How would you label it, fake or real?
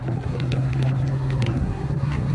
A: fake